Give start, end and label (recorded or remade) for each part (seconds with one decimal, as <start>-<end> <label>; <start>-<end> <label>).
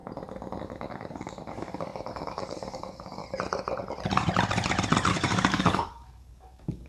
0.0-0.6 recorded; 0.6-3.2 remade; 3.2-5.1 recorded; 5.1-6.9 remade